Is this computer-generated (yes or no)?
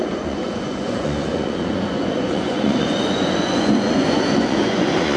yes